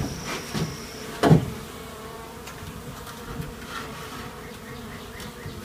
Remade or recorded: remade